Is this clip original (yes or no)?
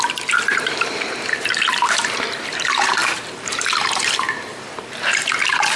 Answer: no